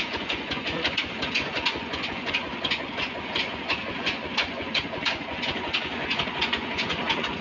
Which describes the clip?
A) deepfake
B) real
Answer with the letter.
A